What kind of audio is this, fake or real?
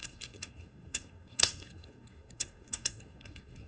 fake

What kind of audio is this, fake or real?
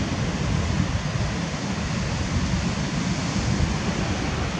real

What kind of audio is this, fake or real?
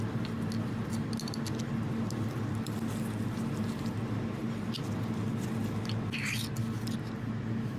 real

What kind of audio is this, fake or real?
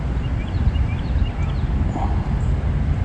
real